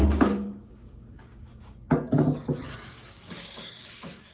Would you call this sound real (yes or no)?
no